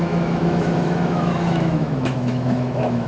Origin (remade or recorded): remade